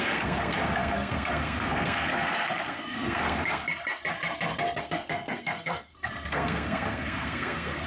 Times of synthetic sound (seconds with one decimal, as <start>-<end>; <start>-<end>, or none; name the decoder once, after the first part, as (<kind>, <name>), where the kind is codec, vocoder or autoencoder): 0.0-3.6 (codec, SNAC); 4.8-7.9